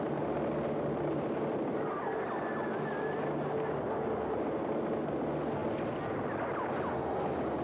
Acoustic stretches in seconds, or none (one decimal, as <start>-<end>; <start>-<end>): 0.0-7.6